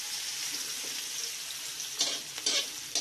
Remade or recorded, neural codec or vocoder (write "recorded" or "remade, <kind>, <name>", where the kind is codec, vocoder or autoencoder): recorded